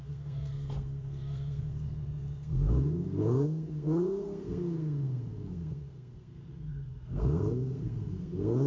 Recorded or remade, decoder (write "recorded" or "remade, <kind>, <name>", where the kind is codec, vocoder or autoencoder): remade, codec, SNAC